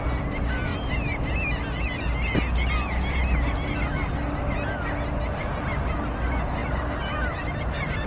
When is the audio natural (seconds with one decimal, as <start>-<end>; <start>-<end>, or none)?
0.0-8.1